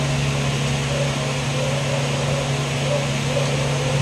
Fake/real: real